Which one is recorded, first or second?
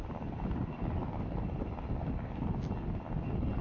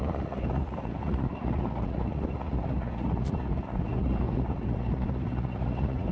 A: first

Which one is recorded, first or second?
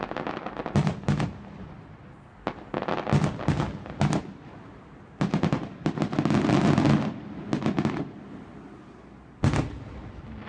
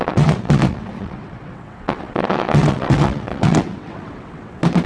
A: first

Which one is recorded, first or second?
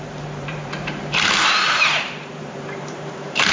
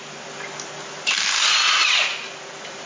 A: second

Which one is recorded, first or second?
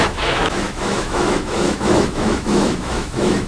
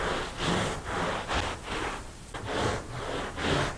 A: second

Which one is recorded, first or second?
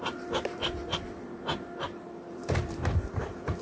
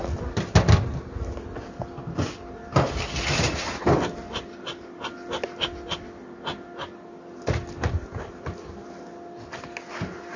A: second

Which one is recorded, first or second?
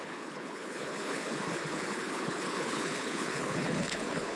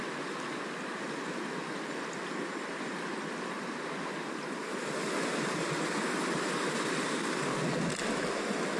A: second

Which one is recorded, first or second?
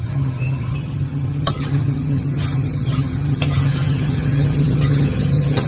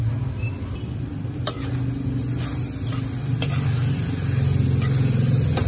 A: second